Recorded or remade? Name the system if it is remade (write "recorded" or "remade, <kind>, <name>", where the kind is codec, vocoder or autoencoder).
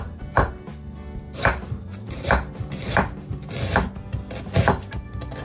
recorded